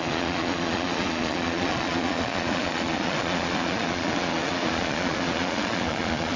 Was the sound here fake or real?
fake